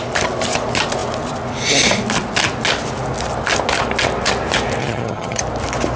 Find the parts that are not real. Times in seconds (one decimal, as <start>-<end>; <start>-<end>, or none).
4.8-5.4